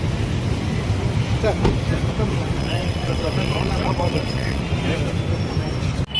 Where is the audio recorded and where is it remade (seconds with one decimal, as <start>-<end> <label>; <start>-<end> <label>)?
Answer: 0.0-2.6 recorded; 2.6-4.6 remade; 4.6-6.2 recorded